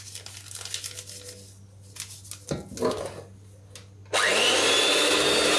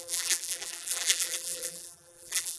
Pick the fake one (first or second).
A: second